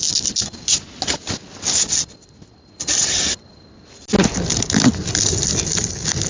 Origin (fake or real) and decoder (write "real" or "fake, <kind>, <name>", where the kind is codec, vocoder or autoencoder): real